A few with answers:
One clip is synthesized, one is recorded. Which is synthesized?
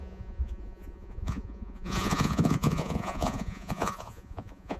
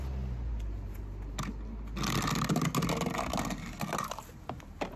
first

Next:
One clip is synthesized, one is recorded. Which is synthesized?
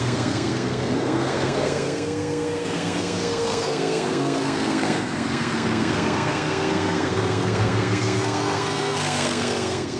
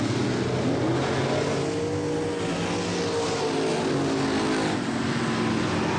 first